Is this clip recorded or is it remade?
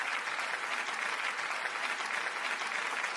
recorded